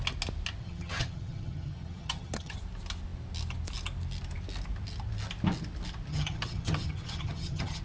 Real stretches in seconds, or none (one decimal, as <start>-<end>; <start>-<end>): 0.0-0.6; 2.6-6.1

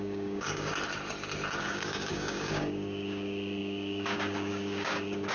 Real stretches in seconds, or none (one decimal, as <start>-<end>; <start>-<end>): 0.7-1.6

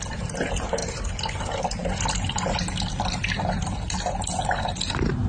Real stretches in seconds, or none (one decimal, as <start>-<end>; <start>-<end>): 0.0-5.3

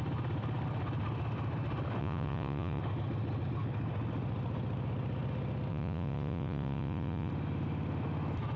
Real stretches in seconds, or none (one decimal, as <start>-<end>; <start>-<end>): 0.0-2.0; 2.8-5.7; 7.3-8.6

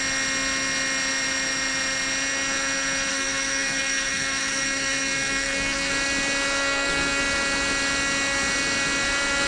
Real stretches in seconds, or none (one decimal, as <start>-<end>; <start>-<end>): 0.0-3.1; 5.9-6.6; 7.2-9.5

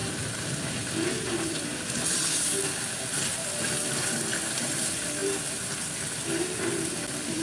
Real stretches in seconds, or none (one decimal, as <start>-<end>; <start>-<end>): none

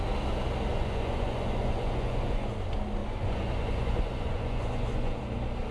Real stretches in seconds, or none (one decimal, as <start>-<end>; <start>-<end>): 0.0-0.7; 2.5-3.0; 5.2-5.7

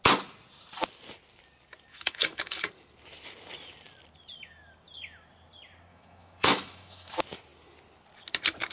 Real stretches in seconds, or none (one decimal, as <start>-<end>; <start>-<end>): 0.0-1.9; 2.7-5.9; 7.1-8.7